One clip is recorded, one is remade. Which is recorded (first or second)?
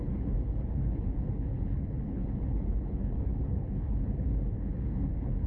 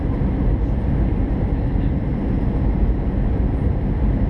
second